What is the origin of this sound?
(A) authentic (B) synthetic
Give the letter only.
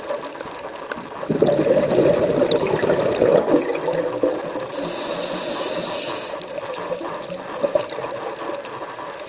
A